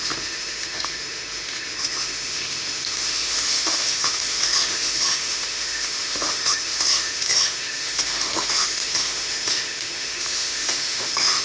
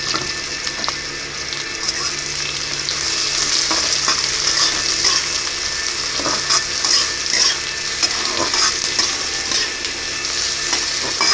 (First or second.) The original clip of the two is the second